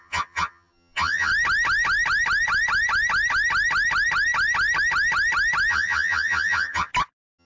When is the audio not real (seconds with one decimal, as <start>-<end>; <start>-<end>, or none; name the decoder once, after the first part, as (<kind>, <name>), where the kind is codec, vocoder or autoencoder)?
0.0-1.3 (vocoder, HiFi-GAN); 5.7-6.9

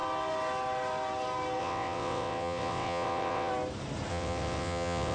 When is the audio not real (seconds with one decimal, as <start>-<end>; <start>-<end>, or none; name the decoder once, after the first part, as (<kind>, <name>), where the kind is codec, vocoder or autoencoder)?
1.6-3.5 (vocoder, WaveNeXt); 4.1-5.1